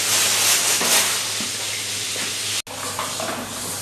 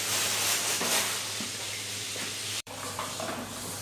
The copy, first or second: second